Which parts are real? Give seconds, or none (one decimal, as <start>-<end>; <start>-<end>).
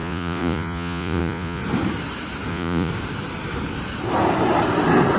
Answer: 1.6-2.5; 2.9-5.2